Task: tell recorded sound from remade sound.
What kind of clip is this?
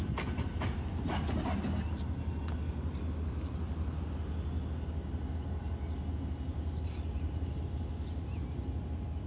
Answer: recorded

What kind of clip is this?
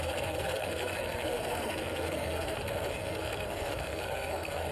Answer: remade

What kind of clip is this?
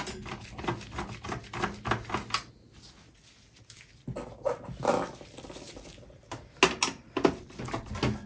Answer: recorded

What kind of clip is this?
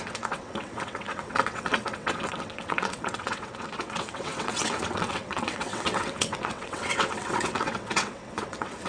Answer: remade